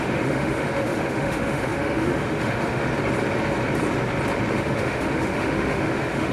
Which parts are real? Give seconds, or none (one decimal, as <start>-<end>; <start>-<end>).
2.9-4.5